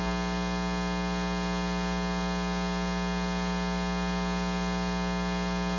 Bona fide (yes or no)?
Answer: yes